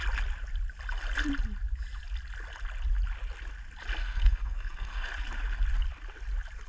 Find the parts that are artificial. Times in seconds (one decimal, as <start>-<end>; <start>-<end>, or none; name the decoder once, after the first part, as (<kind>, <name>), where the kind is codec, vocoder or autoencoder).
4.0-5.1 (codec, SNAC)